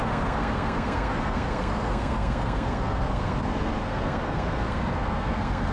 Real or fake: fake